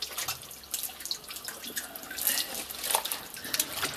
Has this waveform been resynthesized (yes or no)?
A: no